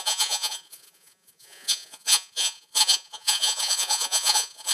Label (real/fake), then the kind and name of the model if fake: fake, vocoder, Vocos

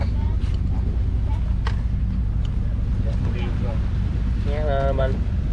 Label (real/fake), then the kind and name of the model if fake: real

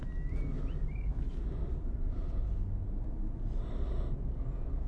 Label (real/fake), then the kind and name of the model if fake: real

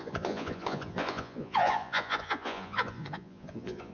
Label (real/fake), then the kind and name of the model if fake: fake, vocoder, Vocos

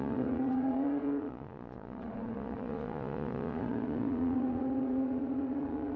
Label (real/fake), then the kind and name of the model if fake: fake, vocoder, Vocos